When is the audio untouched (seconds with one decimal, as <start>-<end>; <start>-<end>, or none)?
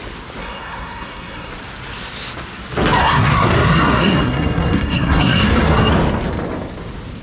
0.0-0.4; 1.5-3.0; 5.9-7.2